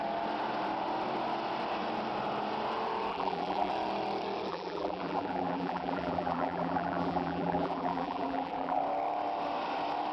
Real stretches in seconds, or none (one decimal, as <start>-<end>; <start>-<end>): 0.0-3.1; 3.7-4.5; 8.8-10.1